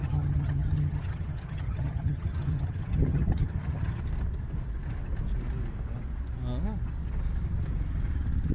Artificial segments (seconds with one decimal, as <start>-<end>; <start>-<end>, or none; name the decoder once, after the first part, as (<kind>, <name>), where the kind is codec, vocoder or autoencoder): 0.0-4.0 (vocoder, HiFi-GAN)